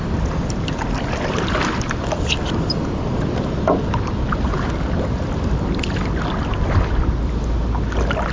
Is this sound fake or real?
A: real